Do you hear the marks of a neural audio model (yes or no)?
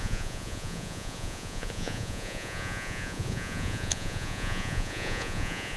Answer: yes